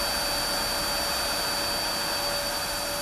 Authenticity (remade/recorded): recorded